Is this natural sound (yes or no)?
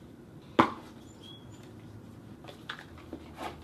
yes